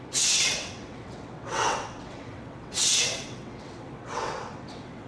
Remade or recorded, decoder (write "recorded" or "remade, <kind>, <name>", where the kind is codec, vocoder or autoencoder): remade, vocoder, WaveNeXt